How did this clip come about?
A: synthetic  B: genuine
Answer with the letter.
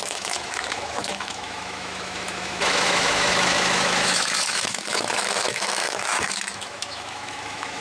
A